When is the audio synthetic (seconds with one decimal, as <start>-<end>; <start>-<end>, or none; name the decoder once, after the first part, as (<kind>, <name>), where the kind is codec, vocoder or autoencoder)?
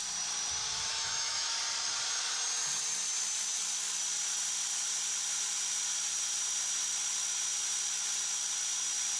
0.9-1.5 (autoencoder, DAC-VAE)